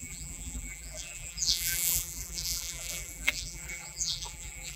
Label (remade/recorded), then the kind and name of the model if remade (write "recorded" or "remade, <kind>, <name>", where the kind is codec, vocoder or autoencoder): remade, vocoder, BigVGAN v2